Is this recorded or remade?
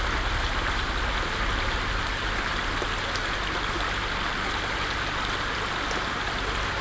recorded